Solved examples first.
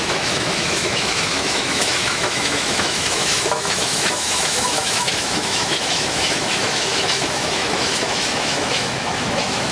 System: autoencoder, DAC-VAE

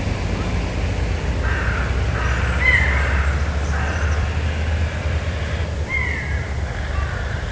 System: none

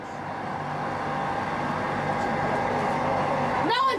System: none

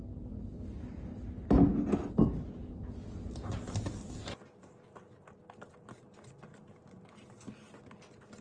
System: none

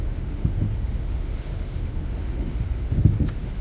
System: autoencoder, DAC-VAE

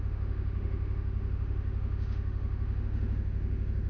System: autoencoder, DAC-VAE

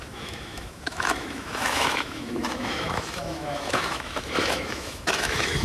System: autoencoder, DAC-VAE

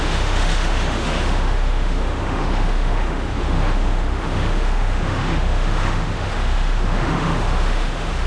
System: autoencoder, DAC-VAE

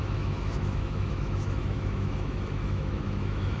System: autoencoder, DAC-VAE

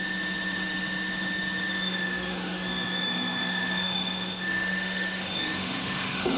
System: autoencoder, DAC-VAE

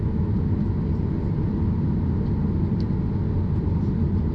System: none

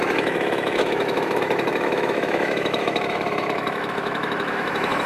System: autoencoder, DAC-VAE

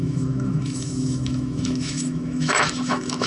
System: autoencoder, DAC-VAE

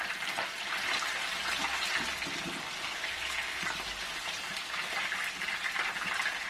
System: none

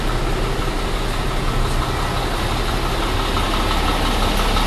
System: none